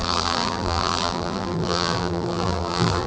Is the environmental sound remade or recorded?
remade